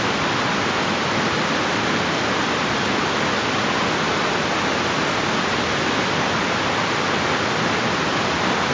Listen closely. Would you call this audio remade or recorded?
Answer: recorded